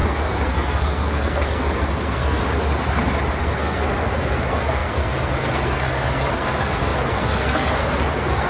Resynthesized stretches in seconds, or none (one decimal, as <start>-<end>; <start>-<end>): 0.0-2.4; 3.4-8.5